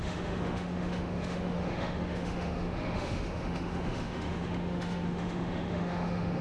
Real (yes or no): no